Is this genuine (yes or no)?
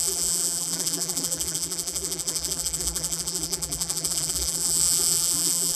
no